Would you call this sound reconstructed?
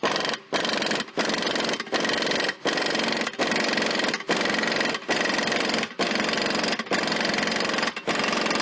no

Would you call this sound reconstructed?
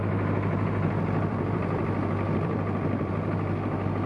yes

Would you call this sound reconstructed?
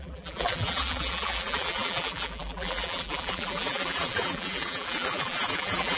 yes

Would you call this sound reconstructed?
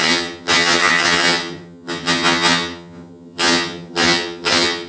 yes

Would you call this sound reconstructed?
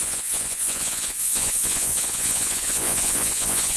yes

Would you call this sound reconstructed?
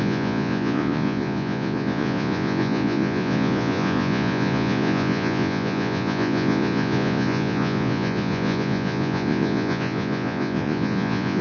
yes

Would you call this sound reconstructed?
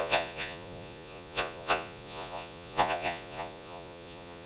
yes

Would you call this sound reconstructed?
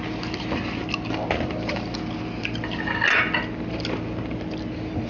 no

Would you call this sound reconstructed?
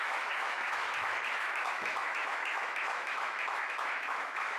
yes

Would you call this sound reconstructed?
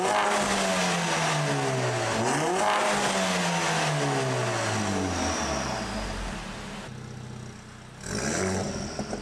no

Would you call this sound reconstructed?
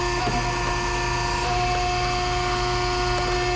no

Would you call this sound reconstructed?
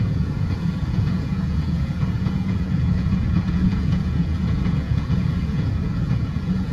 yes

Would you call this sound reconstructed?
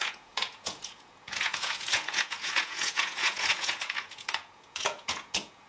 yes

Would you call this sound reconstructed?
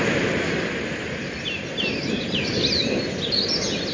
no